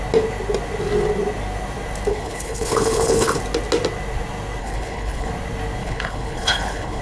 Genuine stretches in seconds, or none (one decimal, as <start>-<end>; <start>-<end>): 0.0-2.1; 3.4-4.6; 5.3-5.8